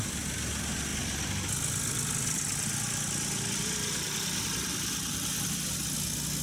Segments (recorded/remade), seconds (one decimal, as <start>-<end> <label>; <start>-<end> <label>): 0.0-6.4 recorded